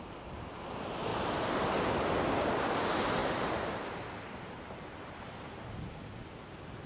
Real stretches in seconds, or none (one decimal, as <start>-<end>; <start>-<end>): 0.0-1.1; 2.1-3.2; 5.3-6.9